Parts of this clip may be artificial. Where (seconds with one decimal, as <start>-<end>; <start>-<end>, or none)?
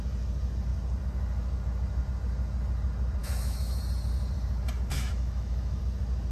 3.2-3.8; 4.9-5.8